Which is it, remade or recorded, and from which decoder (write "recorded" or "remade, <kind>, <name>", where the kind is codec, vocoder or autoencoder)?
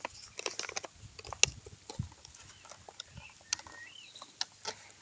recorded